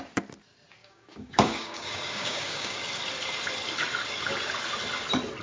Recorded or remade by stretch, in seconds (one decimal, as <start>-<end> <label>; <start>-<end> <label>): 0.0-0.8 recorded; 0.8-2.8 remade; 2.8-5.4 recorded